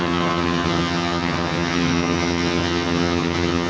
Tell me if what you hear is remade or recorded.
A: remade